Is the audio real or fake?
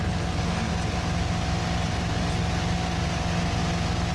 real